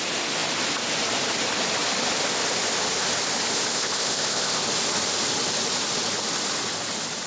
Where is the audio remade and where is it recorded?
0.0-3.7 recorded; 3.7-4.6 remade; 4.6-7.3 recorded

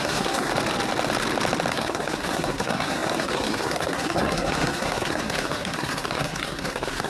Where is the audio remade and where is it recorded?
0.0-0.5 remade; 0.5-1.7 recorded; 1.7-7.1 remade

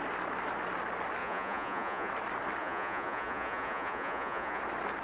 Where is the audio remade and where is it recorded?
0.0-1.2 recorded; 1.2-2.1 remade; 2.1-2.6 recorded; 2.6-4.6 remade; 4.6-5.0 recorded

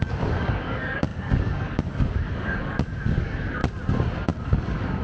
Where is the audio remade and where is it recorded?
0.0-3.6 remade; 3.6-4.4 recorded; 4.4-5.0 remade

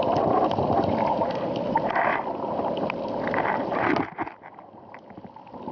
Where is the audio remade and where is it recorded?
0.0-5.7 recorded

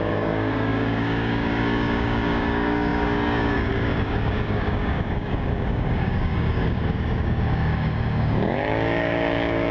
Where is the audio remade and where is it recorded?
0.0-9.7 remade